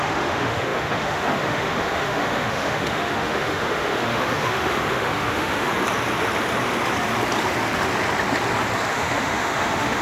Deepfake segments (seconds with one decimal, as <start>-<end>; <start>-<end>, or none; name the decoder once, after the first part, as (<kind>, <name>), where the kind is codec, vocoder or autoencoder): 0.0-5.7 (autoencoder, DAC-VAE); 8.9-10.0